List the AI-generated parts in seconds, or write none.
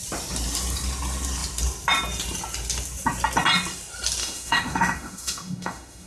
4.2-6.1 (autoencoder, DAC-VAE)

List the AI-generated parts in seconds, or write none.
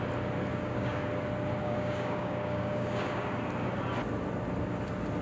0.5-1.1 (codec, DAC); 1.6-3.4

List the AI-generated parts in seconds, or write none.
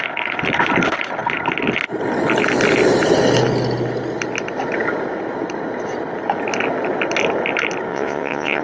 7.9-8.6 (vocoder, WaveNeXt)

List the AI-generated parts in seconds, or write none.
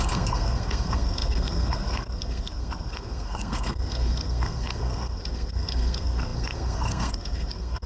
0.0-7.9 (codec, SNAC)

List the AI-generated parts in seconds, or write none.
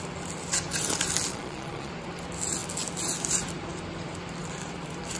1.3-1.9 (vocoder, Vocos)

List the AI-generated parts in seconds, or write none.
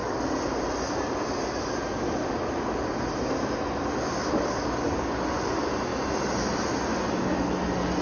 none